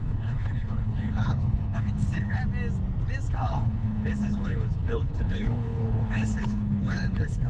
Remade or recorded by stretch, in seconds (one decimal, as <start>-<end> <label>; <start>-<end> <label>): 0.0-2.4 remade; 2.4-3.3 recorded; 3.3-7.5 remade